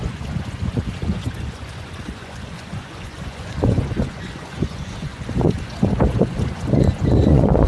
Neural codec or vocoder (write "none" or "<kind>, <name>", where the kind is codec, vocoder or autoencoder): vocoder, Vocos